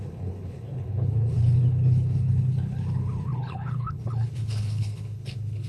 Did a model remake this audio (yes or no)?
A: yes